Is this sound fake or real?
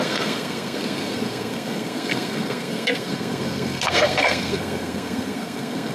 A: fake